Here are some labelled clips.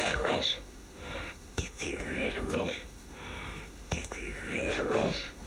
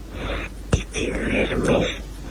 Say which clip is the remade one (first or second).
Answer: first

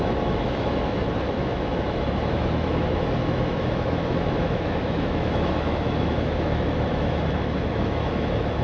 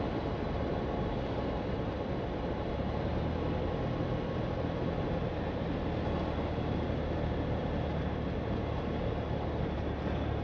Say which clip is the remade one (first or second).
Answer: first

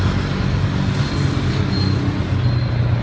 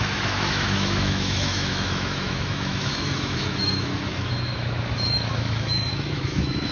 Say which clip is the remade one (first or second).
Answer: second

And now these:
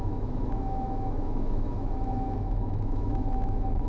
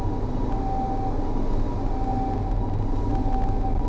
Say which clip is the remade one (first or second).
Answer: first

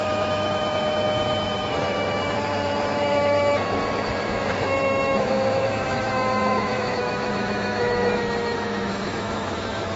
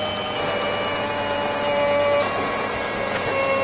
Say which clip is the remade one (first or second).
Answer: first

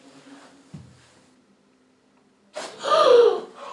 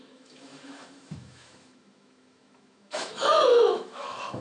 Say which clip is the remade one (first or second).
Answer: second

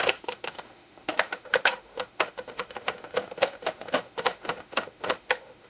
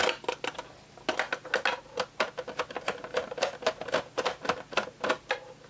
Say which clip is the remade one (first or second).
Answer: first